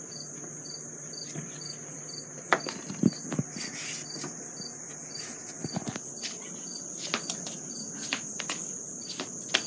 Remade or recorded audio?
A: recorded